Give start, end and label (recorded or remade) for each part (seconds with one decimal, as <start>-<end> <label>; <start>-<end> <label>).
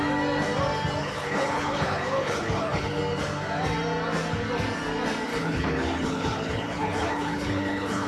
0.0-1.0 recorded; 1.0-3.0 remade; 3.0-5.3 recorded; 5.3-8.1 remade